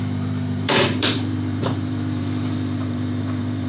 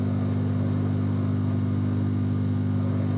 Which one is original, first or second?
second